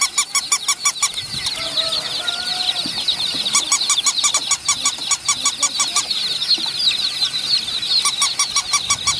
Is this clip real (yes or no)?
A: yes